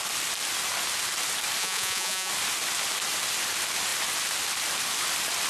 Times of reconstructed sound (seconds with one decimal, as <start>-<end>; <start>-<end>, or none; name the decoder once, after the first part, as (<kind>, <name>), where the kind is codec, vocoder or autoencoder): 1.6-2.3 (vocoder, Vocos)